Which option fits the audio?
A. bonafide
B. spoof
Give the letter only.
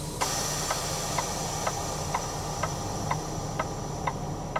A